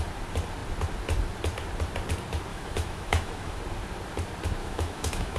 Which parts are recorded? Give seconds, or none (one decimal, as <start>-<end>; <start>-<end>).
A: 0.0-2.5; 3.6-4.6